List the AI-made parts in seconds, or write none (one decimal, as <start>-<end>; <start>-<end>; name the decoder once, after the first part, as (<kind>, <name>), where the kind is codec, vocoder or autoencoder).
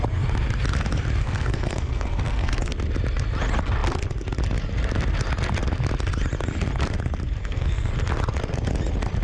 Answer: 1.2-2.7 (codec, SNAC); 7.4-7.9